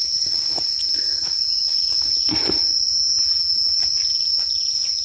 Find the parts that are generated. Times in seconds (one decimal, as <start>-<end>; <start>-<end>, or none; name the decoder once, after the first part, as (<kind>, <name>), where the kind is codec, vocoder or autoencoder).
2.9-3.8 (vocoder, BigVGAN v2)

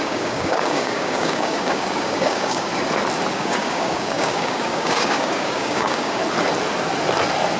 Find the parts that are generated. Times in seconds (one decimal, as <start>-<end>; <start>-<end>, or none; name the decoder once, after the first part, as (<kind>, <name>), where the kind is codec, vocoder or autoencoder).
0.0-2.7 (codec, DAC); 3.3-6.2